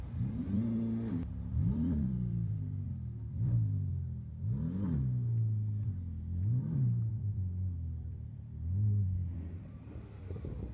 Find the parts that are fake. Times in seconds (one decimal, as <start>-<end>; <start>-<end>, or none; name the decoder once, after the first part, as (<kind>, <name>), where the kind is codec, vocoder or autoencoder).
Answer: 0.0-3.9 (vocoder, BigVGAN v2); 7.1-10.7